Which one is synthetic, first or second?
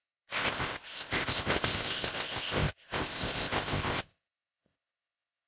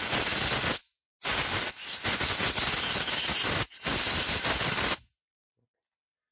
first